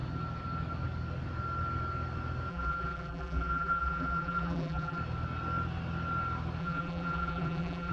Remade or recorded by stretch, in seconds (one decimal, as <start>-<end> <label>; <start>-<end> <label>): 0.0-2.5 recorded; 2.5-5.0 remade; 5.0-6.6 recorded; 6.6-7.9 remade